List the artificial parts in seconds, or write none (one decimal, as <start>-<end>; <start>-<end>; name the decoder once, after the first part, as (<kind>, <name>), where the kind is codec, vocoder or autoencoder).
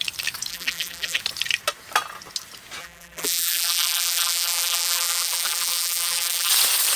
0.5-1.2 (vocoder, BigVGAN v2); 2.8-6.5